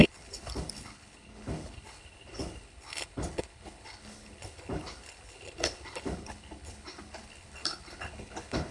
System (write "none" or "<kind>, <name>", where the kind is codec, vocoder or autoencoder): codec, HILCodec